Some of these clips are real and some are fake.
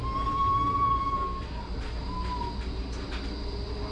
real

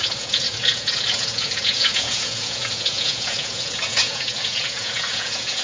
fake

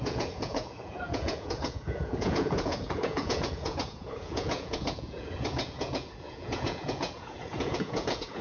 fake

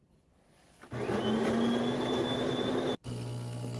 real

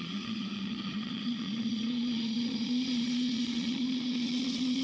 fake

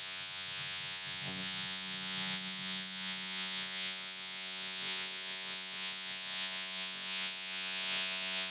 fake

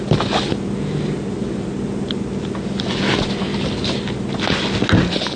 real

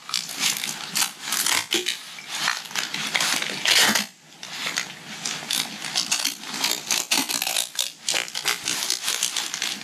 real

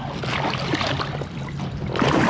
real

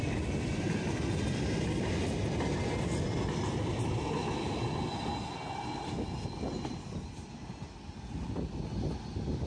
real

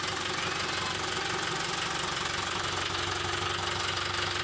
real